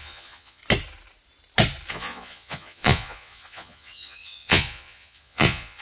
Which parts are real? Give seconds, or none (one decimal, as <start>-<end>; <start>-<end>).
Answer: 0.6-1.9